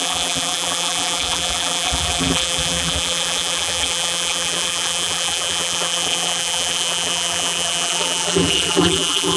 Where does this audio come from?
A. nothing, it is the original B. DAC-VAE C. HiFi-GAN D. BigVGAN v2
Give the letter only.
D